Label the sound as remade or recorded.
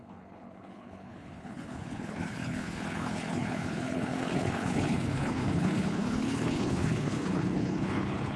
remade